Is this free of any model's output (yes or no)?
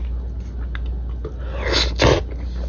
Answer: yes